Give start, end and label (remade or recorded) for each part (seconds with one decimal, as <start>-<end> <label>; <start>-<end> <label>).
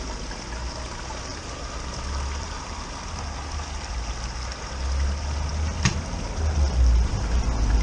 0.0-7.8 recorded